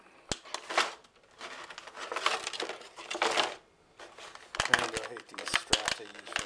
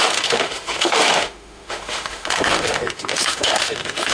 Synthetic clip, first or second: second